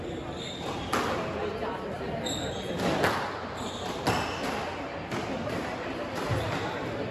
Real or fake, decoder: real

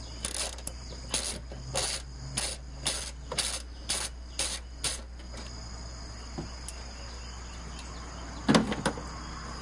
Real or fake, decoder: real